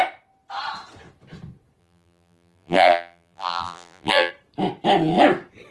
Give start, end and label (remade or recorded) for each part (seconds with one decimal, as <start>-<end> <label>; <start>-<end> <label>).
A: 0.0-1.8 recorded; 1.8-4.3 remade; 4.3-5.7 recorded